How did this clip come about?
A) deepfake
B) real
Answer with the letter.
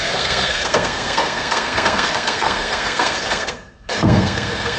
A